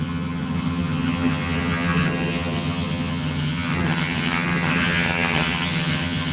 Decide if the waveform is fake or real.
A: fake